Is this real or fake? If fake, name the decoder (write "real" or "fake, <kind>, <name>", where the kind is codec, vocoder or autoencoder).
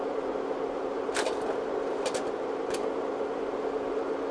real